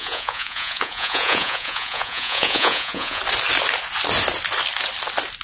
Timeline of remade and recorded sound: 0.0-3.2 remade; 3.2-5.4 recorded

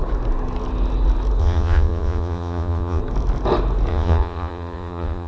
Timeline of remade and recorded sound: 0.0-1.4 recorded; 1.4-3.0 remade; 3.0-3.9 recorded; 3.9-5.3 remade

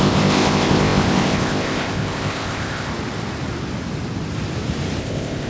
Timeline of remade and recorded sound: 0.0-2.9 remade; 2.9-5.0 recorded; 5.0-5.5 remade

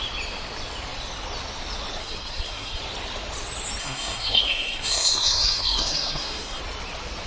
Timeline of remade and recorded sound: 0.0-2.0 recorded; 2.0-2.8 remade; 2.8-3.8 recorded; 3.8-6.6 remade; 6.6-7.3 recorded

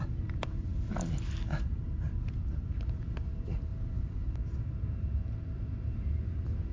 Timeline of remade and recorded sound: 0.0-0.7 remade; 0.7-1.8 recorded; 1.8-3.7 remade; 3.7-4.3 recorded; 4.3-6.7 remade

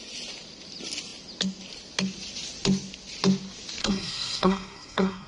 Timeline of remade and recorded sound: 0.0-3.8 recorded; 3.8-5.3 remade

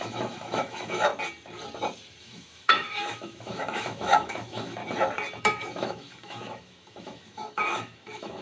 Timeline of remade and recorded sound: 0.0-1.1 remade; 1.1-2.2 recorded; 2.2-4.8 remade; 4.8-5.4 recorded; 5.4-8.4 remade

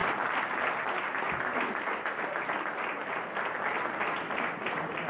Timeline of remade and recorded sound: 0.0-5.1 recorded